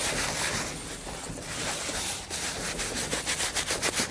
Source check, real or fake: real